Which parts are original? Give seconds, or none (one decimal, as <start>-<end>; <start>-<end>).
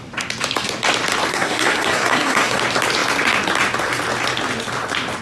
0.0-1.3; 2.6-5.2